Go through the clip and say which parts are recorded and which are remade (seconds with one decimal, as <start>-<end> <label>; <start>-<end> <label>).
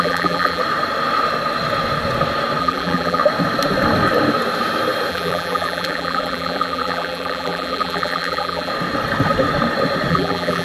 0.0-0.6 remade; 0.6-2.6 recorded; 2.6-3.2 remade; 3.2-5.1 recorded; 5.1-8.7 remade; 8.7-10.1 recorded; 10.1-10.6 remade